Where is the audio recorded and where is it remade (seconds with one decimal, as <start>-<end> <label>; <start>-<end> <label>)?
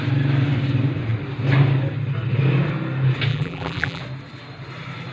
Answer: 0.0-3.3 recorded; 3.3-4.0 remade; 4.0-5.1 recorded